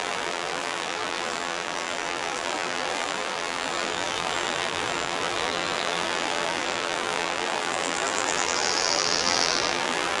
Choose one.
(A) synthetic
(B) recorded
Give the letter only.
A